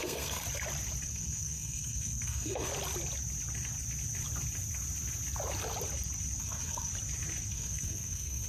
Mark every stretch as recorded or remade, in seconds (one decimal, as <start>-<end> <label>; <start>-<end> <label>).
0.0-0.4 remade; 0.4-1.1 recorded; 1.1-2.7 remade; 2.7-6.4 recorded; 6.4-6.9 remade; 6.9-7.5 recorded; 7.5-8.5 remade

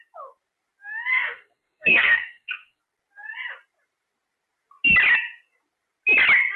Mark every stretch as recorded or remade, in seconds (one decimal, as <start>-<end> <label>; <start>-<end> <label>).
0.0-1.1 recorded; 1.1-2.8 remade; 2.8-6.6 recorded

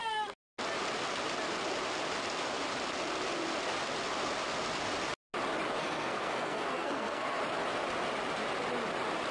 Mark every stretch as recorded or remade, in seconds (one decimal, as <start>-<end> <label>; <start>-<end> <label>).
0.0-5.8 recorded; 5.8-7.4 remade; 7.4-9.3 recorded

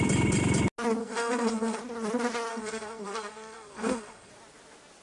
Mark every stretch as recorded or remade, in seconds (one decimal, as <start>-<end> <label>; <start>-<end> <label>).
0.0-1.0 recorded; 1.0-1.8 remade; 1.8-2.5 recorded; 2.5-4.3 remade; 4.3-5.0 recorded

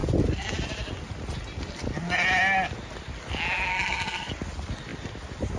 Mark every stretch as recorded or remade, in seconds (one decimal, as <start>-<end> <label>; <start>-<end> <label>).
0.0-3.7 recorded; 3.7-4.3 remade; 4.3-5.6 recorded

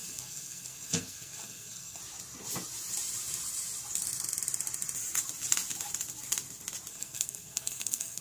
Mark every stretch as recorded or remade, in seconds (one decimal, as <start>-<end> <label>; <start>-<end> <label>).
0.0-2.0 remade; 2.0-6.9 recorded; 6.9-8.2 remade

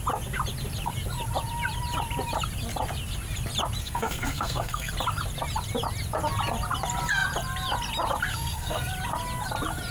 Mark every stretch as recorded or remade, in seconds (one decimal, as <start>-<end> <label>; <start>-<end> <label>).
0.0-3.8 recorded; 3.8-4.9 remade; 4.9-8.3 recorded; 8.3-8.9 remade; 8.9-9.9 recorded

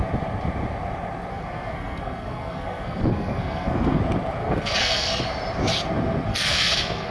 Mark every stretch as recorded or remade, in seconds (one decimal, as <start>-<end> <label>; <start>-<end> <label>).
0.0-1.3 recorded; 1.3-4.0 remade; 4.0-4.4 recorded; 4.4-5.2 remade; 5.2-6.3 recorded; 6.3-7.1 remade